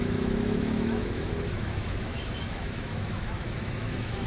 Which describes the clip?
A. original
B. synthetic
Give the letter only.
B